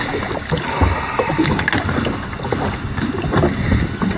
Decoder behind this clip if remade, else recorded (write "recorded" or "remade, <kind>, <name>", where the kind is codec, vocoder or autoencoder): recorded